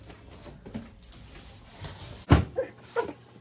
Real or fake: real